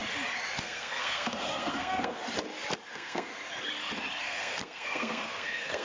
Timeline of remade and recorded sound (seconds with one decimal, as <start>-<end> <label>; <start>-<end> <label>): 0.0-0.6 recorded; 0.6-2.2 remade; 2.2-2.9 recorded; 2.9-3.3 remade; 3.3-4.2 recorded; 4.2-5.8 remade